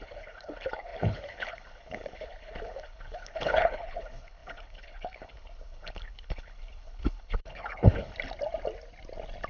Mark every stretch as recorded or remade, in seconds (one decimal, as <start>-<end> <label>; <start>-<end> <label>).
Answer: 0.0-8.1 remade; 8.1-9.5 recorded